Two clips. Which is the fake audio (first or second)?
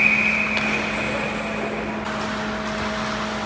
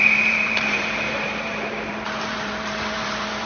second